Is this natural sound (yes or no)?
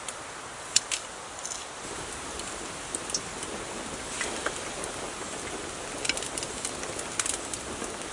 yes